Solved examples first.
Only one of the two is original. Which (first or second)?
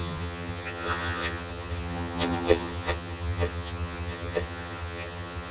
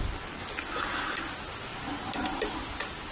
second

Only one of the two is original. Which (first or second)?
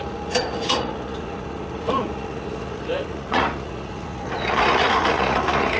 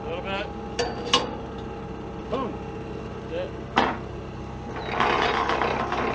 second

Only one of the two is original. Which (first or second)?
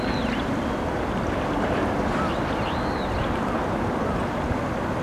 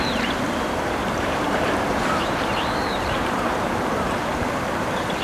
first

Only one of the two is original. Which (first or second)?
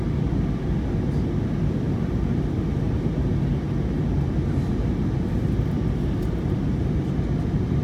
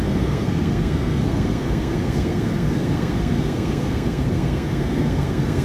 first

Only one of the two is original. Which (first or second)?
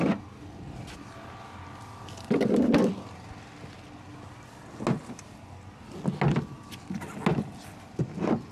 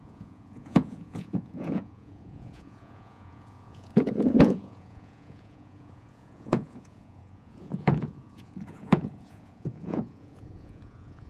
first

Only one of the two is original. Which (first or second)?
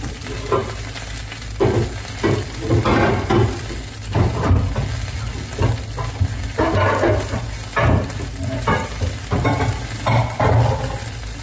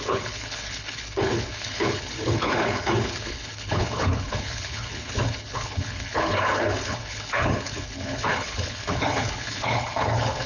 first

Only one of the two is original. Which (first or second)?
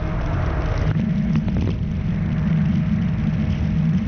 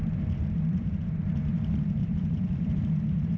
first